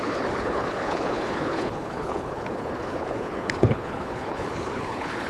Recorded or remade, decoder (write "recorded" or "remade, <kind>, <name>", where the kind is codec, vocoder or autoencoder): remade, codec, HILCodec